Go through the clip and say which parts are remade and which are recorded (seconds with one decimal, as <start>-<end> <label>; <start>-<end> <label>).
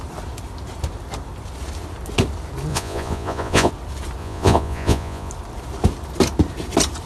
0.0-2.7 recorded; 2.7-3.7 remade; 3.7-4.2 recorded; 4.2-5.3 remade; 5.3-7.1 recorded